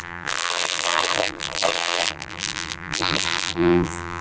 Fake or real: fake